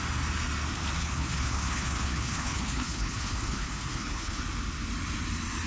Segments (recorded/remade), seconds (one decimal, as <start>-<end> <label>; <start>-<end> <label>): 0.0-1.0 recorded; 1.0-4.4 remade; 4.4-5.7 recorded